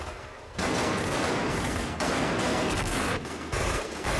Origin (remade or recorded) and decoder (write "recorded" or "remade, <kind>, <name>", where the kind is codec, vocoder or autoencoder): remade, codec, SNAC